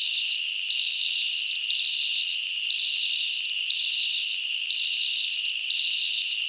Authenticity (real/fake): fake